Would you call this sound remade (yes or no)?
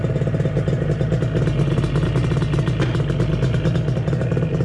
no